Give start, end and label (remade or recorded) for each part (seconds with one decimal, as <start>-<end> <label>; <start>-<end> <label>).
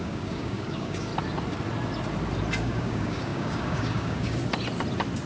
0.0-1.1 remade; 1.1-2.6 recorded; 2.6-4.4 remade; 4.4-5.3 recorded